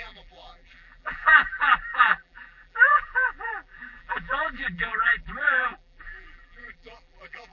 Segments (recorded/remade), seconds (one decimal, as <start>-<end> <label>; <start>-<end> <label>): 0.0-7.5 remade